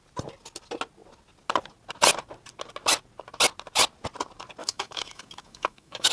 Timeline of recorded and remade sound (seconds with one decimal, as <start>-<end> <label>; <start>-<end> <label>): 0.0-4.6 recorded; 4.6-6.1 remade